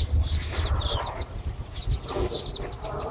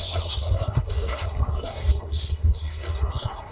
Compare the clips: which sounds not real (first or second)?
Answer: second